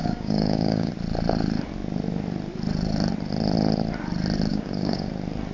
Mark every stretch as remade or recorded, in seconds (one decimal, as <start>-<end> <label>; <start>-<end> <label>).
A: 0.0-0.9 remade; 0.9-4.5 recorded; 4.5-5.1 remade; 5.1-5.5 recorded